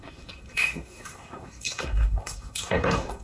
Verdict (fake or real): fake